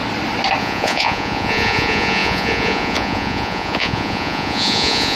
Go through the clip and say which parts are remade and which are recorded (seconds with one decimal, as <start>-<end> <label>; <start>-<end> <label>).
0.0-0.6 recorded; 0.6-5.2 remade